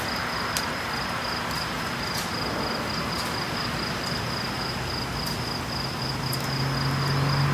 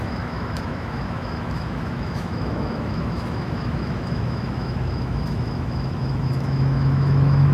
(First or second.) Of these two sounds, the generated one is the second